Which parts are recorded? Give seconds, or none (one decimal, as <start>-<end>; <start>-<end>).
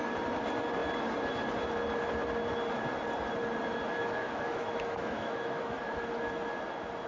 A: 0.0-4.0; 6.0-7.1